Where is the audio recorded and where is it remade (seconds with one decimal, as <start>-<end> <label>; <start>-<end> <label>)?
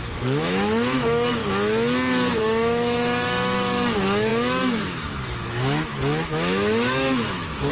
0.0-1.4 remade; 1.4-2.4 recorded; 2.4-7.7 remade